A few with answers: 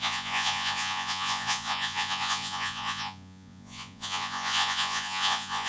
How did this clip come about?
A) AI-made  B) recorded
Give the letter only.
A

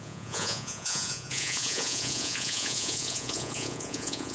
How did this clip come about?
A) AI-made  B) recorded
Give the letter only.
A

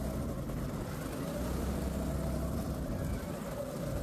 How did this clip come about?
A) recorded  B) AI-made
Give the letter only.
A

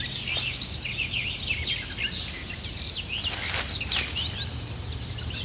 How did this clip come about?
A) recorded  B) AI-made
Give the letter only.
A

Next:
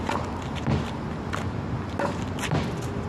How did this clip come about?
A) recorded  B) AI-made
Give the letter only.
A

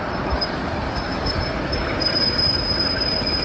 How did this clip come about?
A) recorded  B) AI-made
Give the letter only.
A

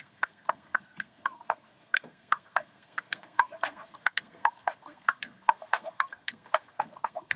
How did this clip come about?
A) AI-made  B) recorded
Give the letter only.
A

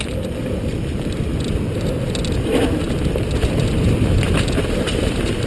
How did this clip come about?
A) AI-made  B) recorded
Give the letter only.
B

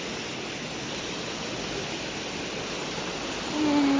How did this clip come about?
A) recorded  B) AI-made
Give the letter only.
A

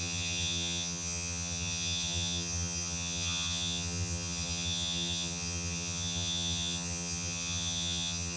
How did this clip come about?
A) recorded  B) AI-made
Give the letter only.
B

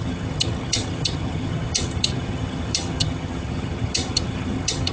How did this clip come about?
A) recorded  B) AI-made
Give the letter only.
B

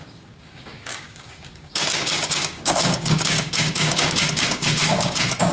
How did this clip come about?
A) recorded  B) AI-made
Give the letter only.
B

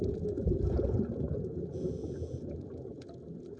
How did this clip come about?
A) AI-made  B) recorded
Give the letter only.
A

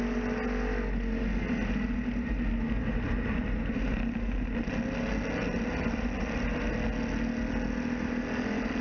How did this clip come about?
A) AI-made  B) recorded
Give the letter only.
B